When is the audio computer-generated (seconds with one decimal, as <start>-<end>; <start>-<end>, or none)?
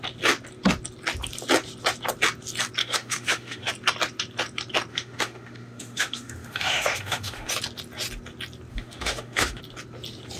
2.8-3.7; 4.9-7.5; 8.7-9.6